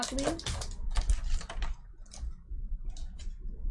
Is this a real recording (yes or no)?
yes